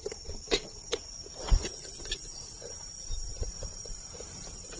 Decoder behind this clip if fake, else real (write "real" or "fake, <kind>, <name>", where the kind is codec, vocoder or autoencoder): fake, vocoder, BigVGAN v2